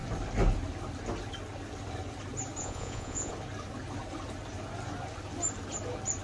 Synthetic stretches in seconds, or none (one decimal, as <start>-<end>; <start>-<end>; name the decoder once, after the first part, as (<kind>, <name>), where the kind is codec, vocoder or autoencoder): 2.6-3.3 (vocoder, Vocos)